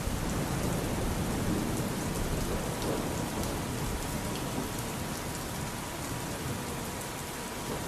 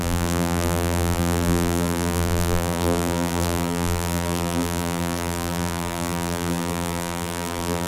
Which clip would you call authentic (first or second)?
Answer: first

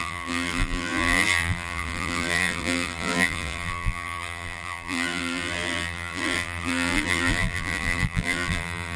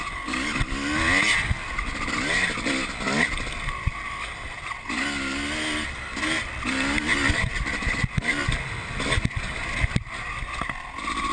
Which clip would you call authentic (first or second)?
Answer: second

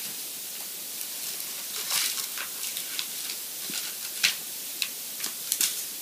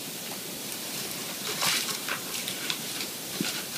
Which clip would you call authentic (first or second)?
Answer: first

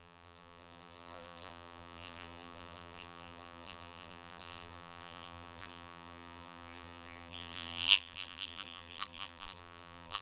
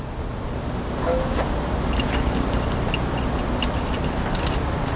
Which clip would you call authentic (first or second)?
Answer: second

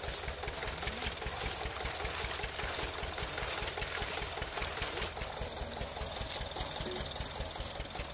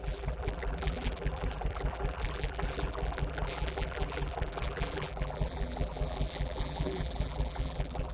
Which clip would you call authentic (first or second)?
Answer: first